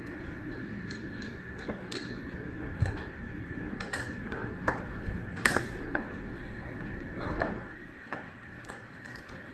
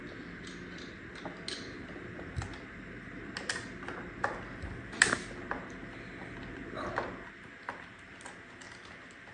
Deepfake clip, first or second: first